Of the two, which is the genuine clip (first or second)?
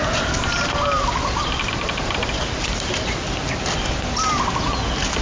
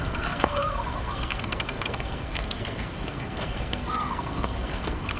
first